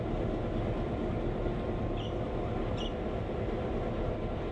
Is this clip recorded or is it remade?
recorded